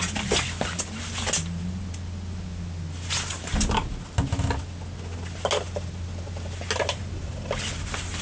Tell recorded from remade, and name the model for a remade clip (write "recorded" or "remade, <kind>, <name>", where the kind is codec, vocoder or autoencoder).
recorded